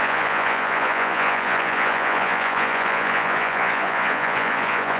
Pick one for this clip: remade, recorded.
remade